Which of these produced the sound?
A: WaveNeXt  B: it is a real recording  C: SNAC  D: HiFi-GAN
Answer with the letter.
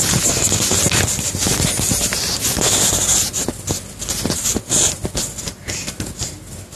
B